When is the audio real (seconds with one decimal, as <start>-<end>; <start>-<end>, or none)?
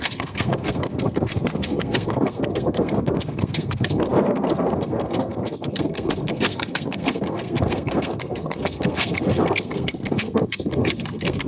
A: none